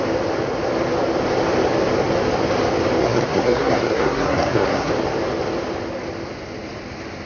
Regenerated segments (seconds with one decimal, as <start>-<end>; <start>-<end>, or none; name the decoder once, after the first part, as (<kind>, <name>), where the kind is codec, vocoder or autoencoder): 3.0-4.9 (codec, SNAC)